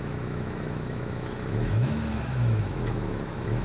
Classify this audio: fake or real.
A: fake